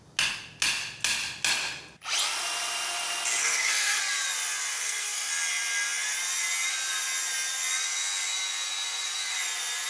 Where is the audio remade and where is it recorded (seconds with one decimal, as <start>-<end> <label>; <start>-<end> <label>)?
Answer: 0.0-3.4 recorded; 3.4-4.0 remade; 4.0-4.7 recorded; 4.7-5.3 remade; 5.3-9.9 recorded